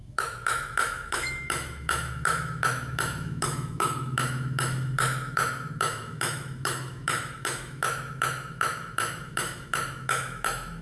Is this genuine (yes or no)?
no